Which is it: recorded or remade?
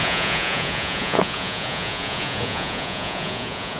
remade